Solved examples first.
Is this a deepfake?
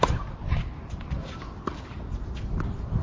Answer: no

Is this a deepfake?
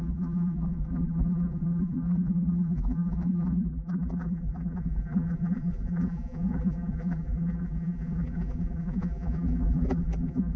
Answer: yes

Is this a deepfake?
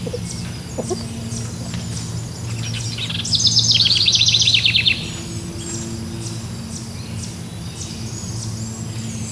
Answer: no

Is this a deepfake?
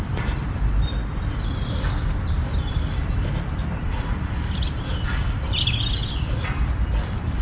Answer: yes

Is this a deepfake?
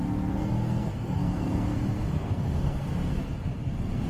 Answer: yes